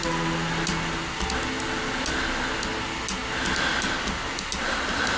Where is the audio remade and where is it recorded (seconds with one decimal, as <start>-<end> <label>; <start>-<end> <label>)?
0.0-5.2 recorded